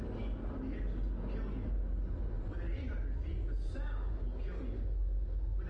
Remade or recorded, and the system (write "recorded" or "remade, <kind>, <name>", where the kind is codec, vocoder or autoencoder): recorded